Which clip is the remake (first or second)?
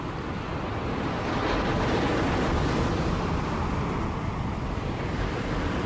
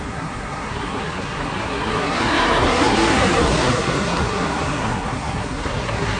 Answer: second